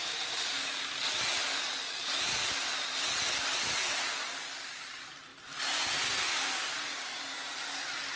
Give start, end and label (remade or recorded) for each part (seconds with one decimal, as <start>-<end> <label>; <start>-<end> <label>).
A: 0.0-0.8 remade; 0.8-5.3 recorded; 5.3-7.0 remade; 7.0-8.2 recorded